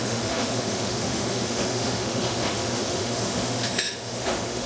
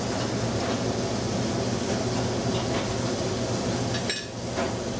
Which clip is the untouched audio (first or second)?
second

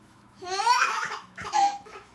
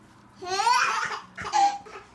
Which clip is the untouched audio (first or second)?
second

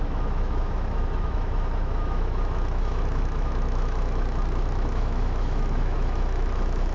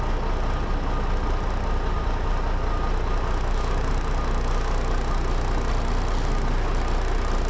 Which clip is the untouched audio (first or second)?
second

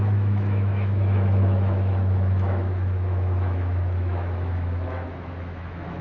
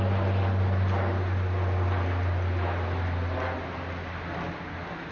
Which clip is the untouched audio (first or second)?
second